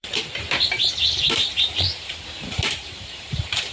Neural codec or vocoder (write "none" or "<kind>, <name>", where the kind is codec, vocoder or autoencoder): vocoder, BigVGAN v2